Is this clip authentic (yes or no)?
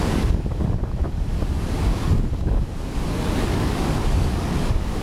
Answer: no